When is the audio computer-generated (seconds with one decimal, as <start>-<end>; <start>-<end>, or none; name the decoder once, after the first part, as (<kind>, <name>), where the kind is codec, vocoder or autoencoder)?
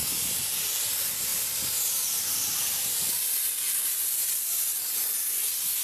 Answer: 1.3-4.8 (vocoder, BigVGAN v2)